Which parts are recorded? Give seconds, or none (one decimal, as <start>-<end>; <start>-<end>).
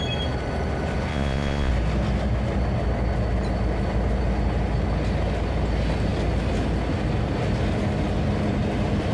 0.0-1.1; 1.7-9.1